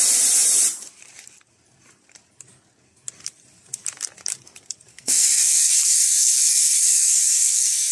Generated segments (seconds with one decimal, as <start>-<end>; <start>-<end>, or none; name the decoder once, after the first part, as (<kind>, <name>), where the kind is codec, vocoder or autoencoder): 4.9-7.9 (codec, SNAC)